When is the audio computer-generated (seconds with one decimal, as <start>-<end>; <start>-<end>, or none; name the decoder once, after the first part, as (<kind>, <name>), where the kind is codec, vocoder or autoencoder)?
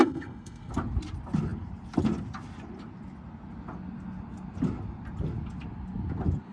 0.0-0.7 (codec, SNAC)